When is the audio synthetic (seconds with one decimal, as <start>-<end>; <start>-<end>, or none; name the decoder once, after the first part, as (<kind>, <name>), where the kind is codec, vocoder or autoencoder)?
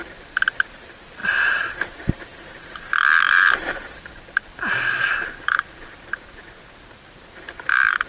0.6-1.2 (vocoder, BigVGAN v2); 3.2-3.8; 5.1-8.1